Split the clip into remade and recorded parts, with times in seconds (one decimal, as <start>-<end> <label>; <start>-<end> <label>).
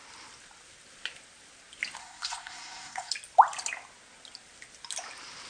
0.0-2.0 recorded; 2.0-3.1 remade; 3.1-5.5 recorded